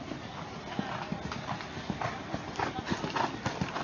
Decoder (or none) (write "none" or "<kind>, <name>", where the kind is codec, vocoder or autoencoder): none